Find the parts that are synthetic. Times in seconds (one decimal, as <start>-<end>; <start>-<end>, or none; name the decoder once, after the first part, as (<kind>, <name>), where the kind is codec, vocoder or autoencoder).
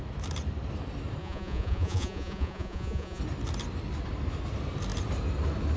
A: 1.2-3.2 (vocoder, Vocos)